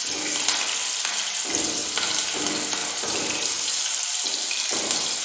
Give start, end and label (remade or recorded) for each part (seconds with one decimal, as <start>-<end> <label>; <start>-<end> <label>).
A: 0.0-1.8 recorded; 1.8-2.4 remade; 2.4-2.8 recorded; 2.8-4.3 remade; 4.3-5.2 recorded